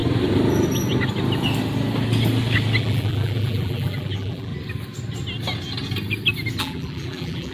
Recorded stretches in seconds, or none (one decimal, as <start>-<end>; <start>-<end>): 0.0-2.8; 4.5-6.6